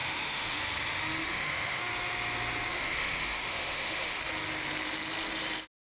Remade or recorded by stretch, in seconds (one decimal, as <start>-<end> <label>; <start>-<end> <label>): 0.0-0.6 remade; 0.6-1.2 recorded; 1.2-1.8 remade; 1.8-2.7 recorded; 2.7-4.2 remade; 4.2-5.9 recorded